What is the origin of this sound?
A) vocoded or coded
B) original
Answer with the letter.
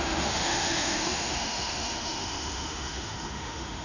A